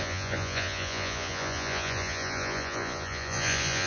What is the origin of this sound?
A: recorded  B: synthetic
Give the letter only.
B